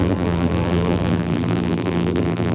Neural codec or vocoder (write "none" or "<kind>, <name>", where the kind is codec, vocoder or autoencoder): vocoder, BigVGAN v2